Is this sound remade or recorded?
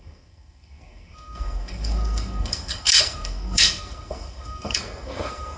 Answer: remade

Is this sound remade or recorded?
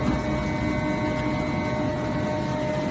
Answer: recorded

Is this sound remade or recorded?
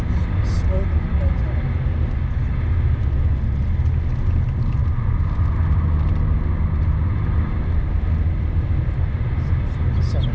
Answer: recorded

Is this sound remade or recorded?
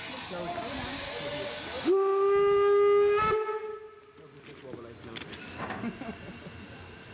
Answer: recorded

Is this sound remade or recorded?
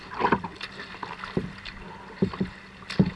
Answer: recorded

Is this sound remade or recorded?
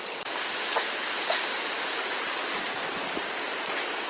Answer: recorded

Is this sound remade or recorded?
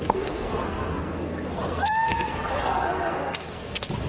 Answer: remade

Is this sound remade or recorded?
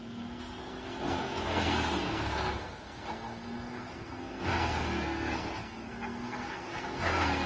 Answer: remade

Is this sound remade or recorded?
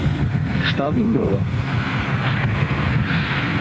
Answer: remade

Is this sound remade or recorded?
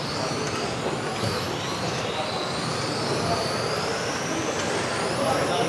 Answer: recorded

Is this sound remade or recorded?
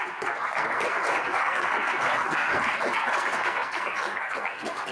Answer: remade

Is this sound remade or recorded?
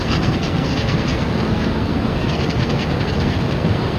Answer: remade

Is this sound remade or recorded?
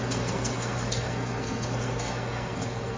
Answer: remade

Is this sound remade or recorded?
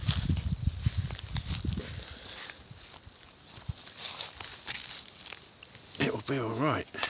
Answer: recorded